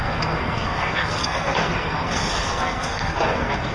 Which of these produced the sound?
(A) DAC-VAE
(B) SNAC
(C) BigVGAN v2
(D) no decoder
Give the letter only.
B